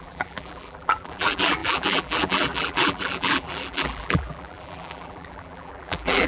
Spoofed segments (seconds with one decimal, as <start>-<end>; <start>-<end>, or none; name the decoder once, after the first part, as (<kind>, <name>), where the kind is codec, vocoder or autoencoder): 0.0-6.3 (vocoder, BigVGAN v2)

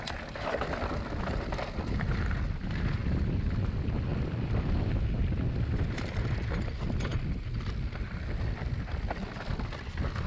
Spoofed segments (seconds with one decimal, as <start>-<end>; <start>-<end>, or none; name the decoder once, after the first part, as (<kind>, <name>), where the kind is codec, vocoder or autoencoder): none

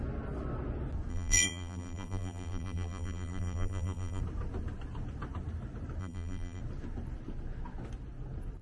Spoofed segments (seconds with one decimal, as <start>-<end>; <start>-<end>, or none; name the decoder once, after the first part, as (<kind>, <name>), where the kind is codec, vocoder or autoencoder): 1.1-4.2 (vocoder, BigVGAN v2); 6.0-6.6

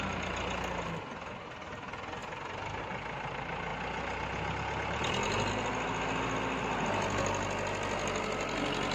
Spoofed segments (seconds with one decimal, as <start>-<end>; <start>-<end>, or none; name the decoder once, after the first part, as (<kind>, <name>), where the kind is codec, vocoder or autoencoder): none

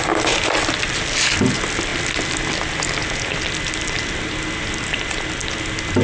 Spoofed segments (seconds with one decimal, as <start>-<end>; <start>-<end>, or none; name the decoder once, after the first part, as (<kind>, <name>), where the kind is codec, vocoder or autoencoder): none

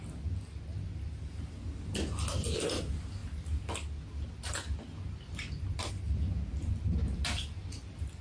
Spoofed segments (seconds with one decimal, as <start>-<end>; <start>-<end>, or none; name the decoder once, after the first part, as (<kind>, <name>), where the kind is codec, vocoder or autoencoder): none